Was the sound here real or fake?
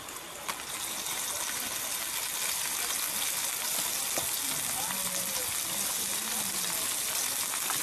real